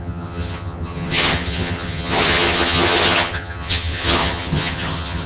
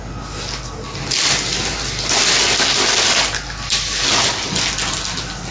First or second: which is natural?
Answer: second